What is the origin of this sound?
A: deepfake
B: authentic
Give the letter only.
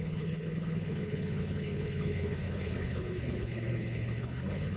A